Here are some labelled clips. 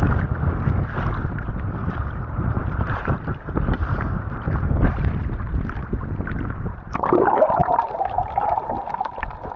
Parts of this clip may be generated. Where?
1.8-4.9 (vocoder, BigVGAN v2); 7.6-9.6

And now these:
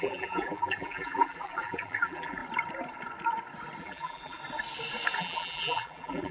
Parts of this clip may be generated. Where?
0.0-2.4 (vocoder, BigVGAN v2); 3.8-4.4; 5.2-6.3

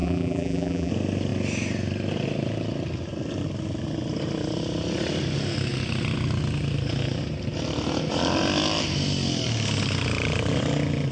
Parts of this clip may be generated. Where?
0.0-0.9 (vocoder, BigVGAN v2)

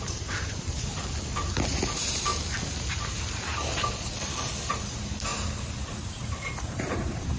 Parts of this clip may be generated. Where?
0.0-0.9 (vocoder, BigVGAN v2); 1.5-2.3; 4.7-7.4